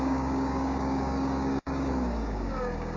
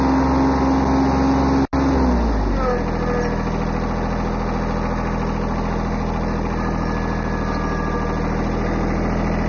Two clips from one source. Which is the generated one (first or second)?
first